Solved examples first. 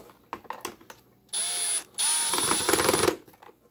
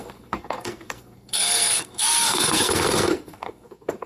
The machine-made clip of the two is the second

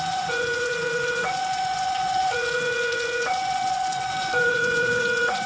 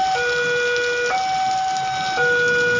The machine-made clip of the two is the first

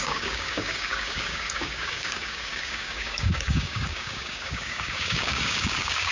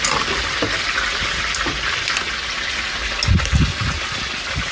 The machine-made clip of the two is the first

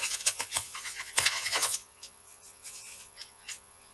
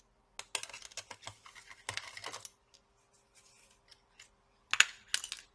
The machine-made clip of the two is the first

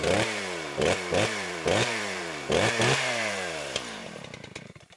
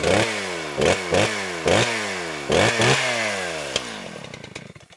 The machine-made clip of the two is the first